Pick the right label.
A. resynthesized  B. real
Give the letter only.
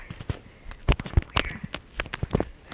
B